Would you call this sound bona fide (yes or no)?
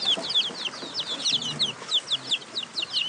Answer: yes